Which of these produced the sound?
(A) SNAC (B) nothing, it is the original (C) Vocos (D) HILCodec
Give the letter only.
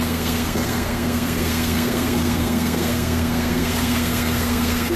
A